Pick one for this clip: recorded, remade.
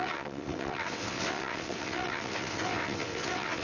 remade